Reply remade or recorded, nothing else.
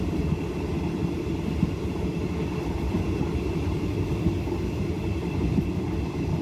remade